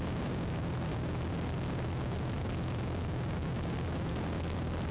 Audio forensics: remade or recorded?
recorded